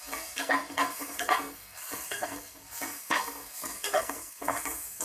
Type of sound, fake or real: fake